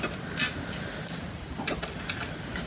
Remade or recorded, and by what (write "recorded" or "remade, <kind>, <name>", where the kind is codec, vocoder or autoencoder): recorded